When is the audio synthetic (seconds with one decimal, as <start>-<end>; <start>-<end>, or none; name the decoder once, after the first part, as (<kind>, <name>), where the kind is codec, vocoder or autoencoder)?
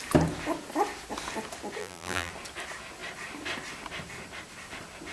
1.8-2.3 (vocoder, BigVGAN v2)